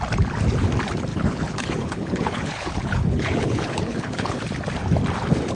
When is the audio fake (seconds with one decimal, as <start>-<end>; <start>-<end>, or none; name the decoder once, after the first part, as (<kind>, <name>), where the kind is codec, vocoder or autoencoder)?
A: 1.1-4.4 (codec, HILCodec)

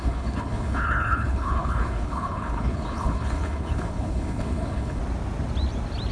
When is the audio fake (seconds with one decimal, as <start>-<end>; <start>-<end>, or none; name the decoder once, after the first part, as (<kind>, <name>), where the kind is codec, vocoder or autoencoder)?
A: 0.0-5.0 (codec, HILCodec)

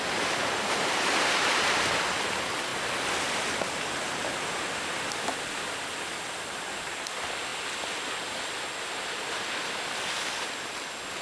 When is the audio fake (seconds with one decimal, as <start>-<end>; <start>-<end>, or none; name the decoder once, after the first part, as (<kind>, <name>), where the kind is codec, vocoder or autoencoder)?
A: 0.4-1.5 (vocoder, BigVGAN v2)

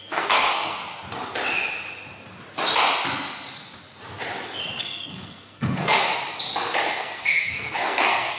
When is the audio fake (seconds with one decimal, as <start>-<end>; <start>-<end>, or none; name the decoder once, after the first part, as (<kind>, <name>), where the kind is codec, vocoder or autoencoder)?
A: 0.0-0.8 (codec, SNAC); 4.8-6.1; 6.8-8.4